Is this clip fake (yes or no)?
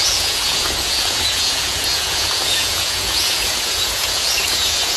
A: yes